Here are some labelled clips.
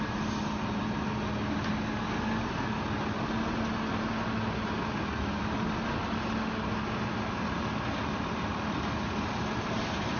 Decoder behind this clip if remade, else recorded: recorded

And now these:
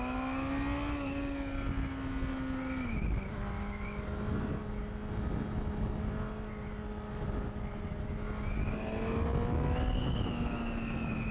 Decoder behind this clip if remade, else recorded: recorded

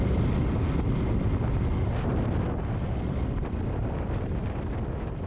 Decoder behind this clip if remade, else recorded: recorded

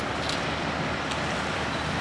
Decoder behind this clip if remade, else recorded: recorded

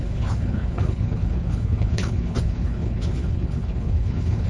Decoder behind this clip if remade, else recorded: remade, codec, HILCodec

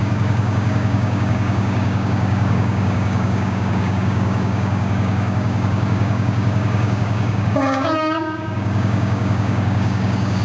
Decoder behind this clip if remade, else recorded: remade, codec, DAC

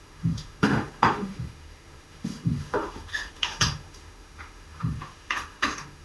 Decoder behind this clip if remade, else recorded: remade, autoencoder, DAC-VAE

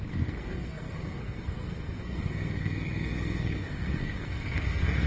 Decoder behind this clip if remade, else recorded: remade, codec, SNAC